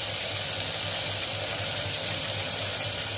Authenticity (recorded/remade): recorded